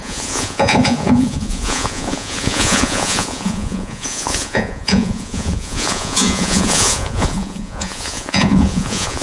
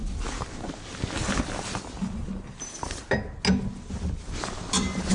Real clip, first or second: second